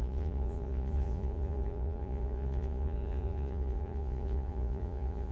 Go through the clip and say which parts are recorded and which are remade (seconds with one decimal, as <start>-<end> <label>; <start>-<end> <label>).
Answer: 0.0-5.3 remade